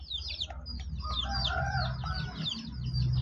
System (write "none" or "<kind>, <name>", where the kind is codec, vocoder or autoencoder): none